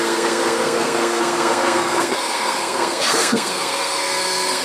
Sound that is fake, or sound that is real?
fake